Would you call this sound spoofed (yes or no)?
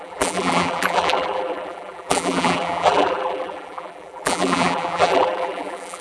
yes